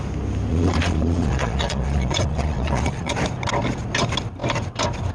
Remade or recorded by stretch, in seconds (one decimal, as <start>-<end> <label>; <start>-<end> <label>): 0.0-0.5 recorded; 0.5-3.1 remade; 3.1-5.1 recorded